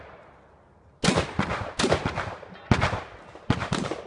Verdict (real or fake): real